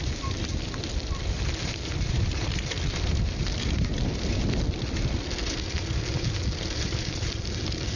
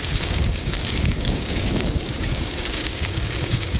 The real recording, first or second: first